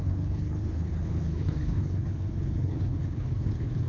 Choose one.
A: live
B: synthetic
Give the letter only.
B